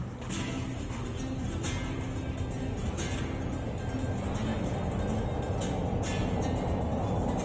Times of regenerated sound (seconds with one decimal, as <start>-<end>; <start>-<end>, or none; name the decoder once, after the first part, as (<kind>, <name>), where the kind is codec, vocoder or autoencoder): none